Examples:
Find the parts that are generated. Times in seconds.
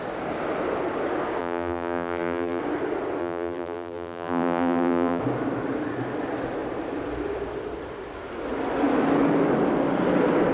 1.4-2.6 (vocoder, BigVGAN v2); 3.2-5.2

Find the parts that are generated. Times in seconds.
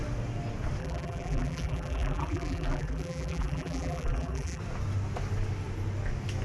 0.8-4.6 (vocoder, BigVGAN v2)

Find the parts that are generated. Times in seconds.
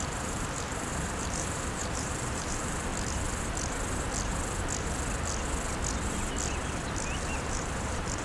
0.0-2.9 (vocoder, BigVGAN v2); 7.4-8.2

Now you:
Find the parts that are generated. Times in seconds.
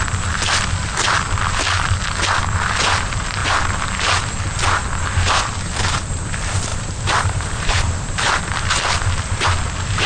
6.7-8.4 (vocoder, BigVGAN v2)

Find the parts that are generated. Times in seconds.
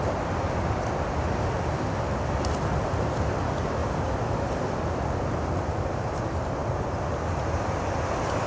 3.8-5.4 (vocoder, BigVGAN v2); 6.6-7.2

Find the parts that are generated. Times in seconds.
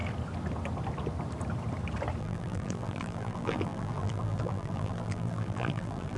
2.2-6.2 (vocoder, BigVGAN v2)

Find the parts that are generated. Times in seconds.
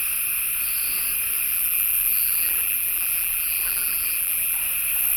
1.5-4.6 (vocoder, BigVGAN v2)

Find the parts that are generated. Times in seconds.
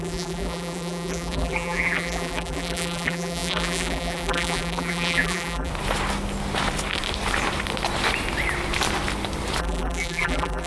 0.0-5.7 (vocoder, BigVGAN v2); 9.6-10.7